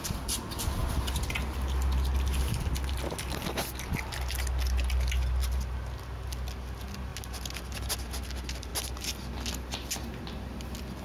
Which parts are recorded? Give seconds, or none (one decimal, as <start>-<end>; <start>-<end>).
0.0-11.0